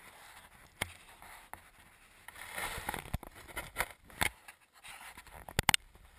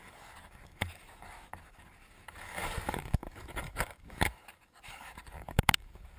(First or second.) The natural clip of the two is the first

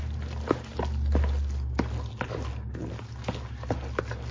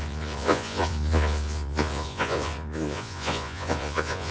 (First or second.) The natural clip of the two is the first